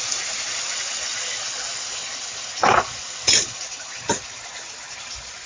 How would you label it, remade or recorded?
recorded